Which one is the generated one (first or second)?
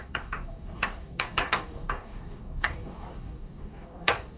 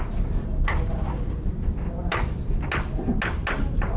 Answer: first